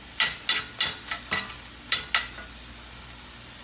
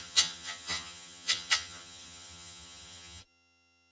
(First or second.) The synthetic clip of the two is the second